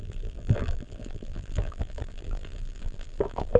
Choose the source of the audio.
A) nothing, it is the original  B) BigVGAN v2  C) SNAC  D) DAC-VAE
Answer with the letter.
B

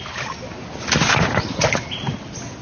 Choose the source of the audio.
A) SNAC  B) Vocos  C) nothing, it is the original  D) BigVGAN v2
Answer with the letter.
C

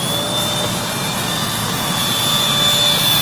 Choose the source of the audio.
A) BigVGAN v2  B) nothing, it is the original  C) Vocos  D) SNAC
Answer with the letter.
B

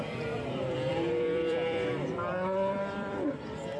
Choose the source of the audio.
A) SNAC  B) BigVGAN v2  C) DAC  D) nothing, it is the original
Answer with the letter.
B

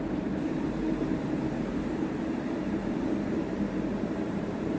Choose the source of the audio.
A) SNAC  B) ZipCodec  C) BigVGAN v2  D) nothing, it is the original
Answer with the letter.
C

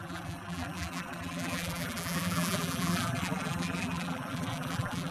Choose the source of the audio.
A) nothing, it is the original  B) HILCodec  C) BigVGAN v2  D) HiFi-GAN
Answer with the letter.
C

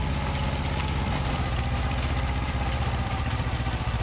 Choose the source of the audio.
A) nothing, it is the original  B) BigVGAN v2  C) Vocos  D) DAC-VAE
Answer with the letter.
B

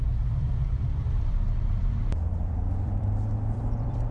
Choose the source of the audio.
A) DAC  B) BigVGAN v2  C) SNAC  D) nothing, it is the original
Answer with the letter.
B